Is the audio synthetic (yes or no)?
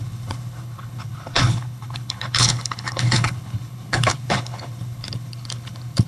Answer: yes